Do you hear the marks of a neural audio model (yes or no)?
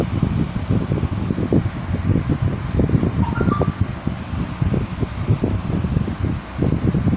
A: no